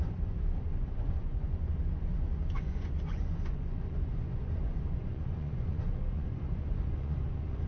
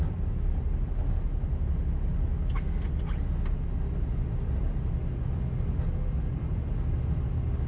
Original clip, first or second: second